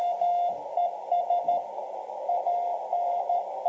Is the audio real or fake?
real